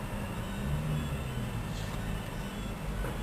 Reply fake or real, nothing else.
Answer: real